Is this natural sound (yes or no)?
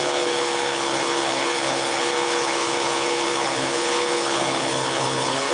no